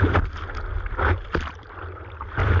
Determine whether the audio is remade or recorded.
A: recorded